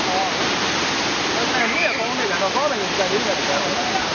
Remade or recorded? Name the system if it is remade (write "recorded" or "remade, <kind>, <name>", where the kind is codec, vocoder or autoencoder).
recorded